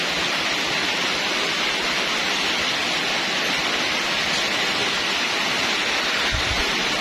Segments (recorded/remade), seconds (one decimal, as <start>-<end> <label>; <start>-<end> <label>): 0.0-7.0 recorded